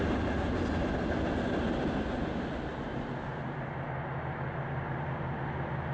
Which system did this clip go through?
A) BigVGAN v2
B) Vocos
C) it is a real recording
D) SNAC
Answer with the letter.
C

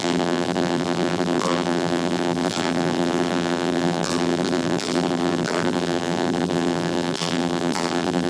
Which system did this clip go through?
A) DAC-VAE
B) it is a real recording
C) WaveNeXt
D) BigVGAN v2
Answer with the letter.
D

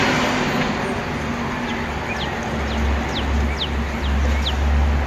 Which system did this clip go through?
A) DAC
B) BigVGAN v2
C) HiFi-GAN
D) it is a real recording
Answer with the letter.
D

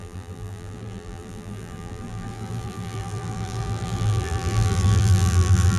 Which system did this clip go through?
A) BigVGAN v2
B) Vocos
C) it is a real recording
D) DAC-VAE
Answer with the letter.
A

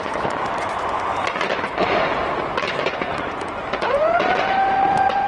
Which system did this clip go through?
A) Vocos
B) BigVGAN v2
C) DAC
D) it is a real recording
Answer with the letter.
A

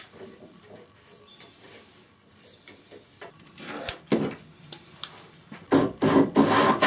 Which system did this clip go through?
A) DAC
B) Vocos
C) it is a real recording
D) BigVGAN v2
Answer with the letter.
C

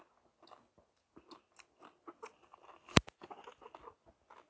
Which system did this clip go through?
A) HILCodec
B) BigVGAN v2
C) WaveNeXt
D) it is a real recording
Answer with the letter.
D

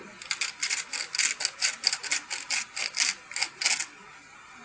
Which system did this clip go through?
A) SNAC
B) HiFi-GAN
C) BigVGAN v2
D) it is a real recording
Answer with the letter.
D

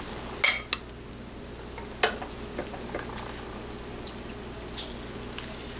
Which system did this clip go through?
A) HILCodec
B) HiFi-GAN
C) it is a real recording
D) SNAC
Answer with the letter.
C